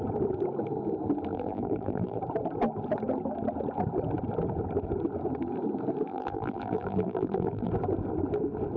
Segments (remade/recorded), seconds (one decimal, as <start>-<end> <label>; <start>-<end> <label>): 0.0-1.3 recorded; 1.3-2.2 remade; 2.2-6.1 recorded; 6.1-7.7 remade; 7.7-8.8 recorded